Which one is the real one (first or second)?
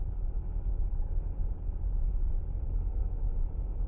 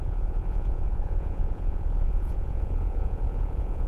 first